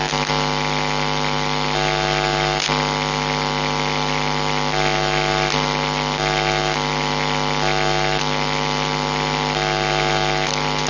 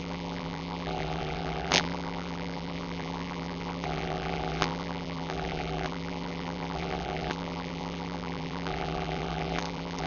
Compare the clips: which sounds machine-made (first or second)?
second